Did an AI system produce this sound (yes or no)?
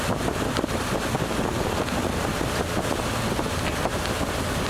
no